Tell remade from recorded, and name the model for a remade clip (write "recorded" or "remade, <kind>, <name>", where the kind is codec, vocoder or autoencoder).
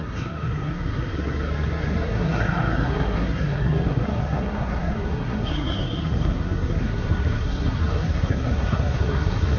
remade, codec, SNAC